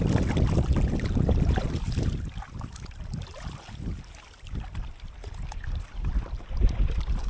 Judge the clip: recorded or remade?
recorded